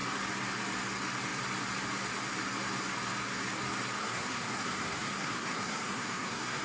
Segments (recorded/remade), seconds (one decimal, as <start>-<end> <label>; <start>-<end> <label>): 0.0-4.0 recorded; 4.0-6.6 remade